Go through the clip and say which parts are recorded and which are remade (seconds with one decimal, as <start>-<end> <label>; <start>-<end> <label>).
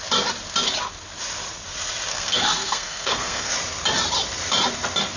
0.0-2.1 recorded; 2.1-3.5 remade; 3.5-5.2 recorded